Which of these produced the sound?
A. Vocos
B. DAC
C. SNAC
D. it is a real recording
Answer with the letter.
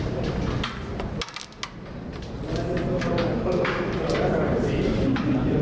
D